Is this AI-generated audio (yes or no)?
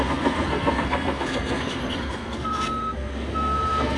yes